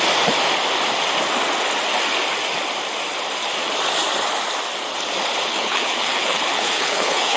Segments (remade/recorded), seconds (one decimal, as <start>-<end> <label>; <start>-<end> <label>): 0.0-5.5 recorded; 5.5-7.4 remade